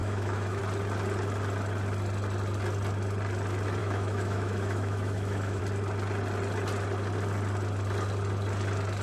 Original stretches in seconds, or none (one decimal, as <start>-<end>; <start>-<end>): 0.6-3.8; 5.6-9.0